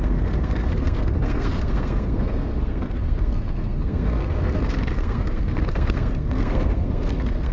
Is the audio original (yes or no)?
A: no